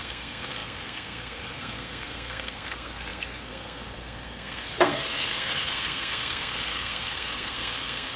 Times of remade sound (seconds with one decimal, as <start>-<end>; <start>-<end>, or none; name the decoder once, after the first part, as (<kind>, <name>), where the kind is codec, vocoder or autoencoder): 0.0-8.2 (codec, SNAC)